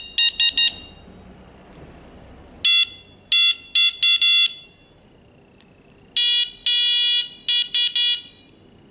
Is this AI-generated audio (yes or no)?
no